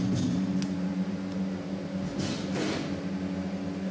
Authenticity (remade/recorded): recorded